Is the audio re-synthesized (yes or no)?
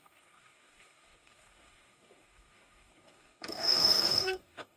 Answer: yes